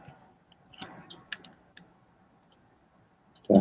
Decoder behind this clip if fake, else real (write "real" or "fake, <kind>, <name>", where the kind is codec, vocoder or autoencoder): real